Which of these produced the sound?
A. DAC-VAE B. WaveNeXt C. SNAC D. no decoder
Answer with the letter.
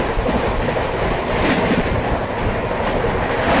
D